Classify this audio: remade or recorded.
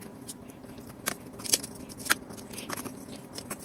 remade